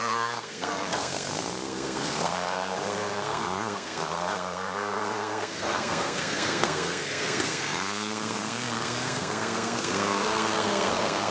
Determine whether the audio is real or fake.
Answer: fake